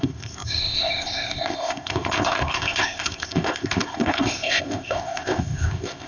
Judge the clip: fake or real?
fake